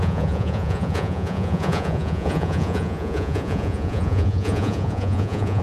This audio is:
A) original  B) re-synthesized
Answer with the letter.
B